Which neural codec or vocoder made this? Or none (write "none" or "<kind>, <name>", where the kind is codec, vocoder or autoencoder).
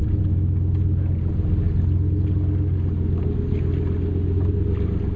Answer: none